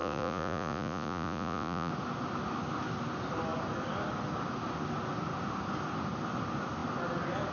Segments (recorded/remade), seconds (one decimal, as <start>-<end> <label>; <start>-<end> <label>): 0.0-1.9 remade; 1.9-7.5 recorded